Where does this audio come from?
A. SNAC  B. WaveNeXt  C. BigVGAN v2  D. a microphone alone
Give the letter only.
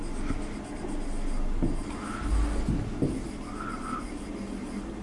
D